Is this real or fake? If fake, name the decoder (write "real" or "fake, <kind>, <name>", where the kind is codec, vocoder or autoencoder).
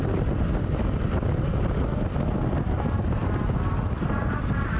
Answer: real